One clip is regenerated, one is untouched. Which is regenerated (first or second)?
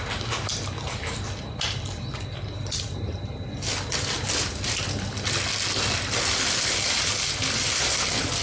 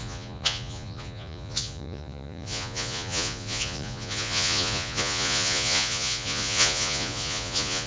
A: second